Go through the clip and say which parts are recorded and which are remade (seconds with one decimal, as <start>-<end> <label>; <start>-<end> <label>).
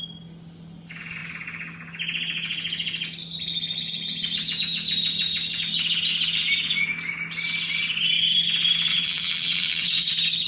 0.0-8.9 recorded; 8.9-10.1 remade; 10.1-10.5 recorded